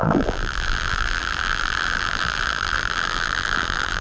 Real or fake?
fake